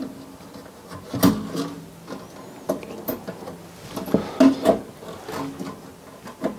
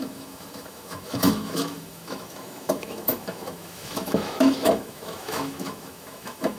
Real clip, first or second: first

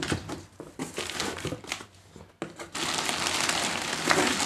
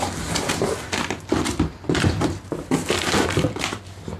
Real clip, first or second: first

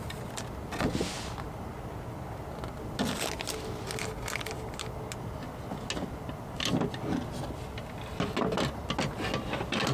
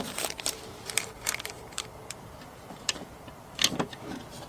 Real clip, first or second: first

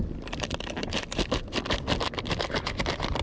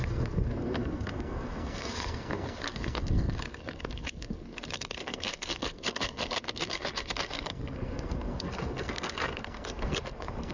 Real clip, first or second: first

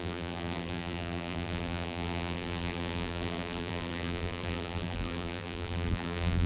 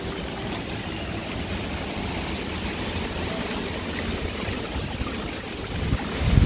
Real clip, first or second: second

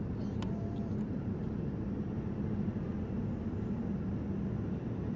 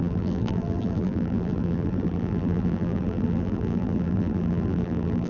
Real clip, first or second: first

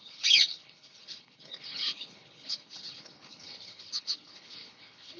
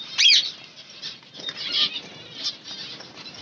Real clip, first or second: second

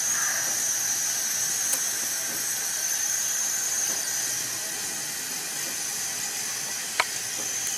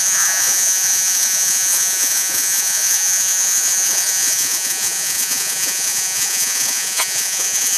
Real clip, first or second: first